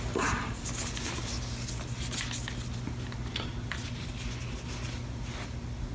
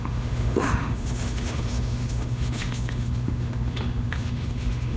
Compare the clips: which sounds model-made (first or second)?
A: second